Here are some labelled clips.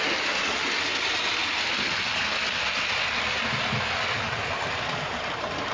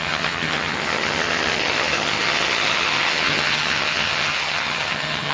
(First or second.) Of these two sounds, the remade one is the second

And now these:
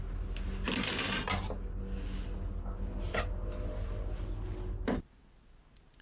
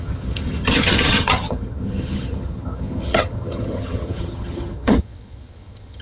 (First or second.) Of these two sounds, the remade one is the second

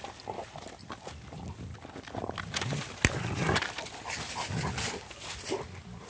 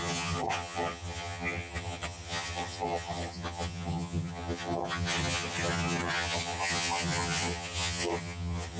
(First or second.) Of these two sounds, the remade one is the second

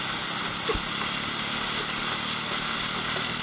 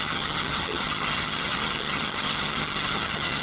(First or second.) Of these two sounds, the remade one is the second